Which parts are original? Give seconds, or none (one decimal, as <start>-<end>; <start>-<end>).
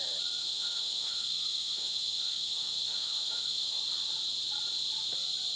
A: 0.0-0.4; 3.8-5.6